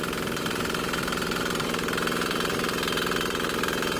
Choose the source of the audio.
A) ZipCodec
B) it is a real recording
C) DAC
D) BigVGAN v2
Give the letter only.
D